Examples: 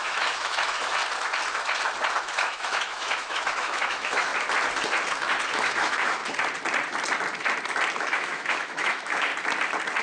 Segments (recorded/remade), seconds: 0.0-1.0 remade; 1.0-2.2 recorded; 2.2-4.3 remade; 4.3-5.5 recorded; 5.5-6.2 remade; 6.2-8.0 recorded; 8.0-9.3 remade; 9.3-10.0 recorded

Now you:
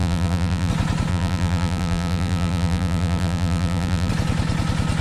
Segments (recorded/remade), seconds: 0.0-0.7 remade; 0.7-1.1 recorded; 1.1-4.1 remade; 4.1-5.0 recorded

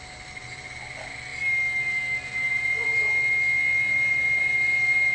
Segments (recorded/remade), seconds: 0.0-5.1 recorded

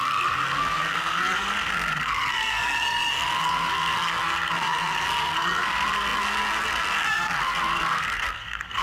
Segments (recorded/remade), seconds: 0.0-8.8 remade